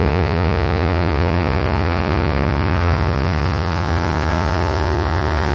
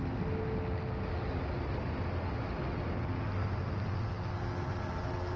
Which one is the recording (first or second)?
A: second